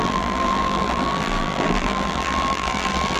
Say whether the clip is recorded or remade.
remade